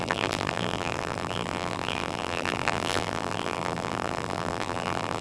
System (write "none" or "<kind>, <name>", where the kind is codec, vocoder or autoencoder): vocoder, BigVGAN v2